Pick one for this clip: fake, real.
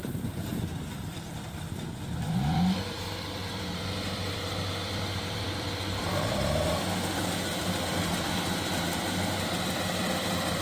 fake